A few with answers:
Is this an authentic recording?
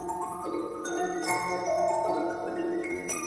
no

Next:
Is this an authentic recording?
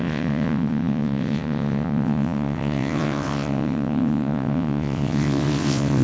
no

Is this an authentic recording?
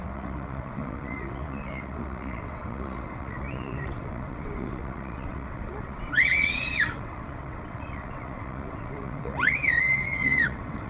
no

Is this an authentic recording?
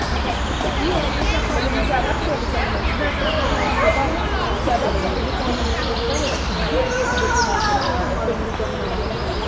yes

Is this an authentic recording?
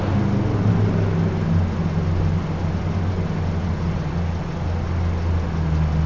yes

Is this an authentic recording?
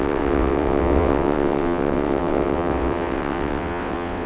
no